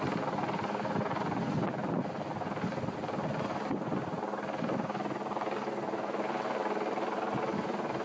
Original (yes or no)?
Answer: yes